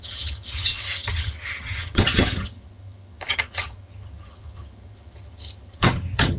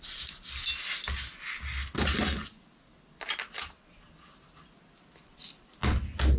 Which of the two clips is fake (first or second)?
first